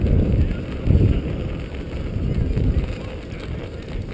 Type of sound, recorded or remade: recorded